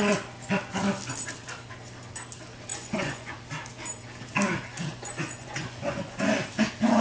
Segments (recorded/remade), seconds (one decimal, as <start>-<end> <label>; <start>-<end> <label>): 0.0-2.7 recorded; 2.7-3.3 remade; 3.3-4.9 recorded; 4.9-6.3 remade; 6.3-7.0 recorded